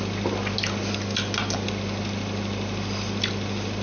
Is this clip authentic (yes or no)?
yes